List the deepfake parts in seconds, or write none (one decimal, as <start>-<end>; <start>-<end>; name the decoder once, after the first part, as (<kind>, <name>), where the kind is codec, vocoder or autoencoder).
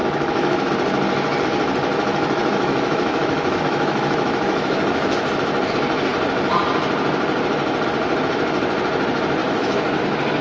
0.0-0.7 (autoencoder, DAC-VAE); 1.9-5.3; 9.4-10.0